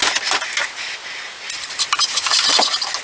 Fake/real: real